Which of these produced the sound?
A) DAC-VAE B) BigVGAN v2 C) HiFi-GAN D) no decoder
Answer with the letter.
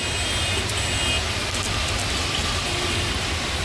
D